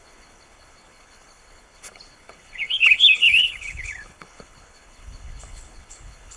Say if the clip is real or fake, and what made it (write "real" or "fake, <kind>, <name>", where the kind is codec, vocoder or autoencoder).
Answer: fake, codec, HILCodec